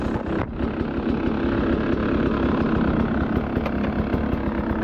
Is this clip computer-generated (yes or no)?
no